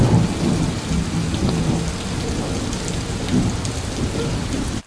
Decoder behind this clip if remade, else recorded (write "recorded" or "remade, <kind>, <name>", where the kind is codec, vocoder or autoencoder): recorded